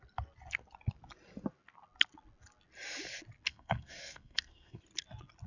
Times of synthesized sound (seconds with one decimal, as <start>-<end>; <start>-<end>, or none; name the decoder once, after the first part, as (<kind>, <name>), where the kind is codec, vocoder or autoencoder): 3.5-4.8 (codec, SNAC)